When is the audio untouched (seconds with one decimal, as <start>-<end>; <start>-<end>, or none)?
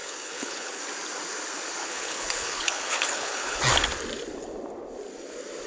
0.8-1.8; 3.6-5.7